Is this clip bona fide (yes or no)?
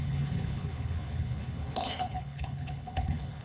no